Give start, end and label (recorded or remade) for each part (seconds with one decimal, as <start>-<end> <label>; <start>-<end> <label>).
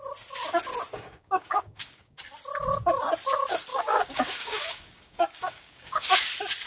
0.0-0.9 recorded; 0.9-2.2 remade; 2.2-3.7 recorded; 3.7-6.2 remade; 6.2-6.7 recorded